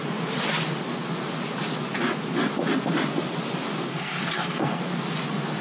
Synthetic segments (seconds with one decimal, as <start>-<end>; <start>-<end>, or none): 3.9-4.8